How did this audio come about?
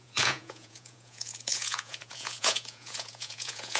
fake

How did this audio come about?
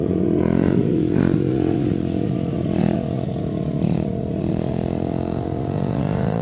fake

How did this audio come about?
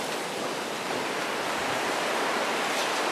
real